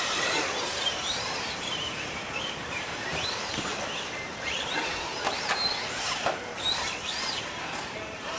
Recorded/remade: remade